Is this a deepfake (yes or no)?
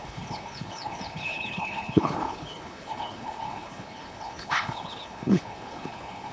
yes